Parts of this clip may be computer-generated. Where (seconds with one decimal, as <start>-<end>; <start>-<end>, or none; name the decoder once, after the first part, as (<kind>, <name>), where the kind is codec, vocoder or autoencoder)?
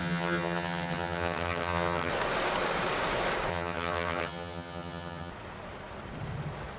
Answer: 0.0-2.1 (vocoder, HiFi-GAN); 3.5-5.3